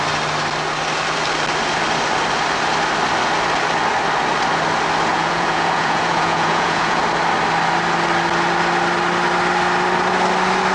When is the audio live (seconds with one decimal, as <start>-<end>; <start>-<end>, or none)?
0.0-5.1; 7.0-10.7